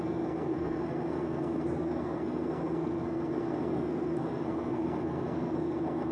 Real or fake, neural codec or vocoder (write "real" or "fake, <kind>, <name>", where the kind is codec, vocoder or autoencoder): fake, codec, SNAC